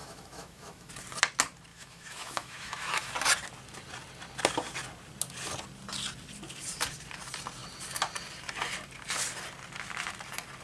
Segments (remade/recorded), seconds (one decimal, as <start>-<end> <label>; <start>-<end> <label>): 0.0-0.9 remade; 0.9-1.7 recorded; 1.7-3.1 remade; 3.1-10.6 recorded